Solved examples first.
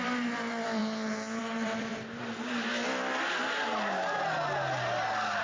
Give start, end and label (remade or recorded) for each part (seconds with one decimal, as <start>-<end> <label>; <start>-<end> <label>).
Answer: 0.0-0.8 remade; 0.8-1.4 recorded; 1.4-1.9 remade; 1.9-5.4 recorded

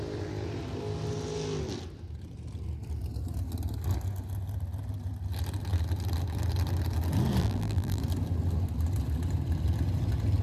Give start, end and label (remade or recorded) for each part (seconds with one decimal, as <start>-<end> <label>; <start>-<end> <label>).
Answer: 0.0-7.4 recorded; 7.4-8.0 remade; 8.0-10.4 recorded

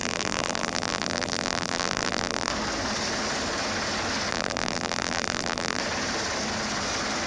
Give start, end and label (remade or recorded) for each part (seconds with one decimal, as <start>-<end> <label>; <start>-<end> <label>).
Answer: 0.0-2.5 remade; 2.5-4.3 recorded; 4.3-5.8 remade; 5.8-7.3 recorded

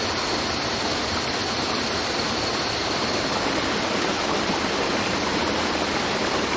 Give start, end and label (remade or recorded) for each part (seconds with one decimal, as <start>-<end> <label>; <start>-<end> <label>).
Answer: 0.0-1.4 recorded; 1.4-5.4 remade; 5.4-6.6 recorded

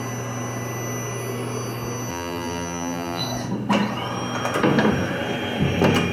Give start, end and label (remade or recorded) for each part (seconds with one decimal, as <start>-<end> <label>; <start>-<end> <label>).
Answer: 0.0-2.1 recorded; 2.1-3.2 remade; 3.2-6.1 recorded

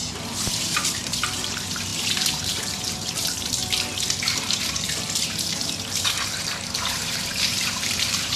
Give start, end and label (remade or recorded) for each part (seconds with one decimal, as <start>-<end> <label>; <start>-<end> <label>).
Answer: 0.0-3.6 remade; 3.6-6.0 recorded; 6.0-8.4 remade